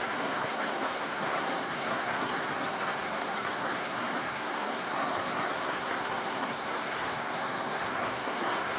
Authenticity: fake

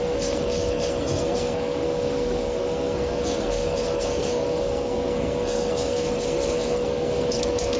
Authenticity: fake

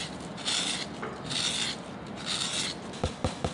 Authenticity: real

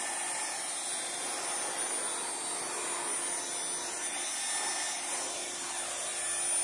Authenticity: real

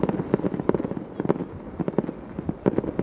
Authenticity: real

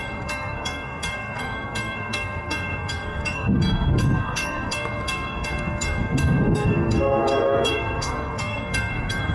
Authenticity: fake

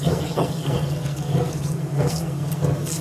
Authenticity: fake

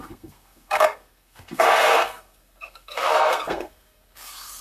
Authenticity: fake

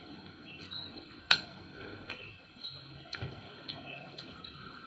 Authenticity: fake